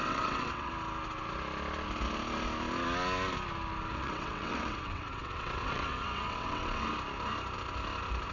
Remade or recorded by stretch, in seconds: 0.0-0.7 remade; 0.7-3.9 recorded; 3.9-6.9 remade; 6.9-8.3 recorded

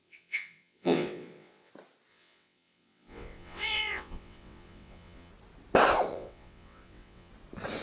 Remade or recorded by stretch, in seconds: 0.0-1.7 remade; 1.7-2.1 recorded; 2.1-5.3 remade; 5.3-6.1 recorded; 6.1-7.3 remade; 7.3-7.8 recorded

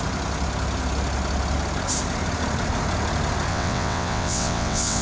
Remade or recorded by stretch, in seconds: 0.0-3.5 recorded; 3.5-5.0 remade

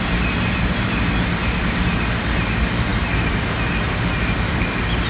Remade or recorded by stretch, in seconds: 0.0-5.1 recorded

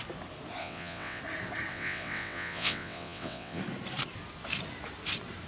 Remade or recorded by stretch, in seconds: 0.0-0.6 recorded; 0.6-1.2 remade; 1.2-1.7 recorded; 1.7-3.6 remade; 3.6-5.5 recorded

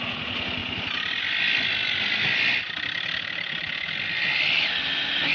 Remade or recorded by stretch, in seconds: 0.0-5.3 recorded